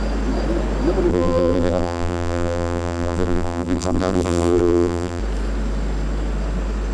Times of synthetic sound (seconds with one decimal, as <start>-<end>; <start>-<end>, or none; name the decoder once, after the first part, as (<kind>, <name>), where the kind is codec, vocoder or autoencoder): 1.1-5.2 (vocoder, BigVGAN v2)